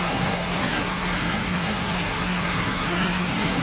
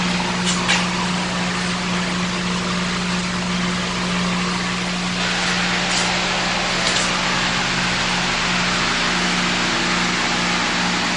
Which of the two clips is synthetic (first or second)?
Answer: first